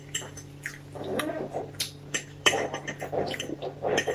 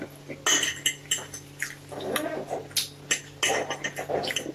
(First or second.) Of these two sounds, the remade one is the first